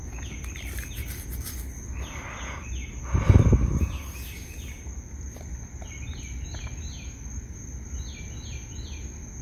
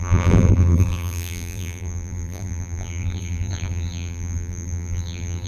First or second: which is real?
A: first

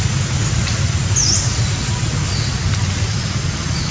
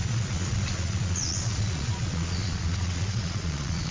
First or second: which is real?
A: first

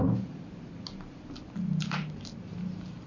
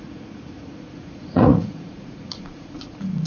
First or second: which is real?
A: first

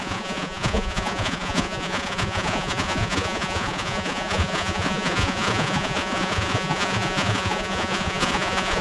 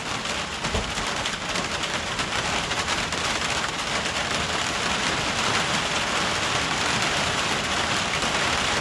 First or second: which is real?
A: second